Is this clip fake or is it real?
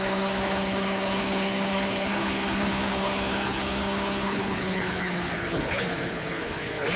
fake